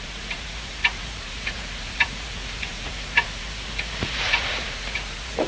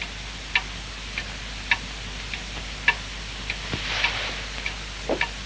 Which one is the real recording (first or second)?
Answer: second